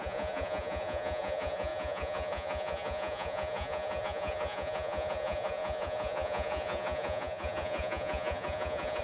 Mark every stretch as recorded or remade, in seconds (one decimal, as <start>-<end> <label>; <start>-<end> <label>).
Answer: 0.0-9.0 remade